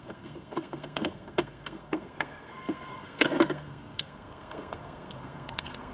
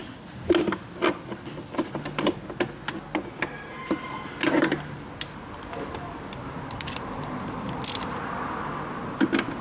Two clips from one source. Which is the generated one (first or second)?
first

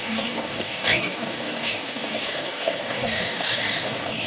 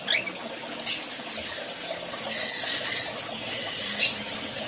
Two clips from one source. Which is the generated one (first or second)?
first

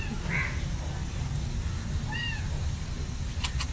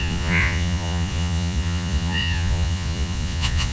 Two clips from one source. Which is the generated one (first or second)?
second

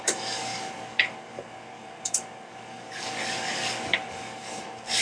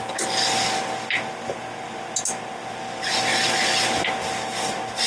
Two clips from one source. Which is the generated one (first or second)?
first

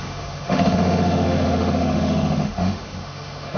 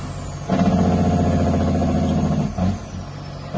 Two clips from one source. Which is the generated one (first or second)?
first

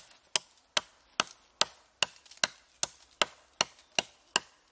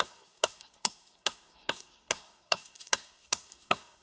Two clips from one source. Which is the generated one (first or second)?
second